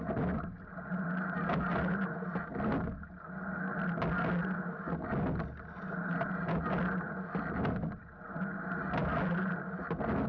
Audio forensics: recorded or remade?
recorded